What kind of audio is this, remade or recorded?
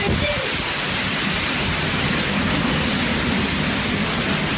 recorded